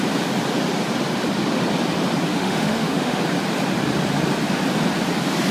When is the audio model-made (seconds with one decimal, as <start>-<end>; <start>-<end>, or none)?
2.3-3.2